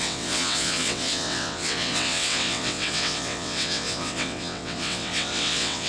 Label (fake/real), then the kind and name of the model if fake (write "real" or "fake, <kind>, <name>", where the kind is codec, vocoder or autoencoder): fake, vocoder, WaveNeXt